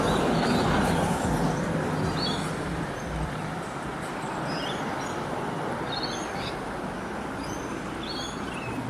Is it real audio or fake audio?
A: fake